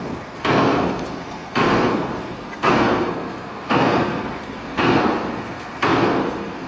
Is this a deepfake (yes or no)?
yes